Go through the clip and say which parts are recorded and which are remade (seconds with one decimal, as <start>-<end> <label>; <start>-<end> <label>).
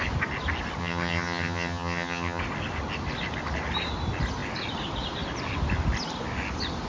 0.0-0.8 recorded; 0.8-2.4 remade; 2.4-6.9 recorded